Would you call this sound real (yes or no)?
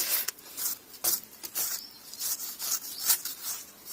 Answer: yes